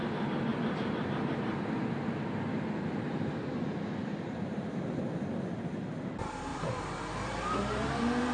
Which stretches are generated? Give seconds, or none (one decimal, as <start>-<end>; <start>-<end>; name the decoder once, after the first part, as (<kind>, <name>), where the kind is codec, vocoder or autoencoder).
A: 0.5-1.7 (vocoder, BigVGAN v2); 4.0-4.7; 6.5-8.3

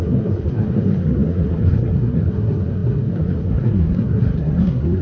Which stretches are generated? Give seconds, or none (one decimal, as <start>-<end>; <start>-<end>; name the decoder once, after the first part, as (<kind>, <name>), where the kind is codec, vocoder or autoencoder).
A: 0.0-5.0 (codec, SNAC)

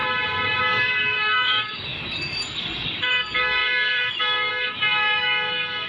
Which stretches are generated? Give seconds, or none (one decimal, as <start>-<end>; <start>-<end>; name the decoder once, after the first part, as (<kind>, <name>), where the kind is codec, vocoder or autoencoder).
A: 0.6-5.9 (codec, DAC)

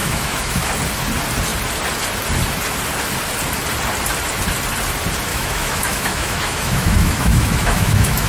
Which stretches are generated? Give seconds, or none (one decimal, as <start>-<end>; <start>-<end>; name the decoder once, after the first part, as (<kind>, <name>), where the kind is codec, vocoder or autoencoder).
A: 0.0-0.7 (autoencoder, DAC-VAE); 5.3-8.3

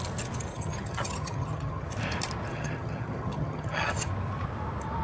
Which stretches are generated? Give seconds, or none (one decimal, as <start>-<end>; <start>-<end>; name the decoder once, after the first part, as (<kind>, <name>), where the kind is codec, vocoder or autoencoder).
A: 0.5-1.9 (vocoder, HiFi-GAN); 2.5-4.1